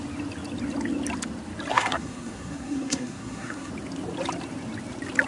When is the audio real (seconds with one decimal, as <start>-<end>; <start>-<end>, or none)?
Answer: 0.0-1.7; 3.7-5.3